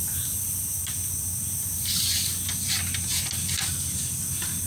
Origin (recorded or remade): recorded